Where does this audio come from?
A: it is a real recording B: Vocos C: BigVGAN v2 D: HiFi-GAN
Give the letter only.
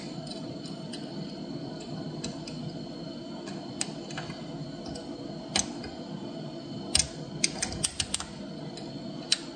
A